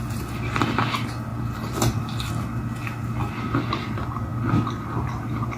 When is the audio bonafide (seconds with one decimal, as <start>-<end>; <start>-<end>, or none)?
0.0-5.6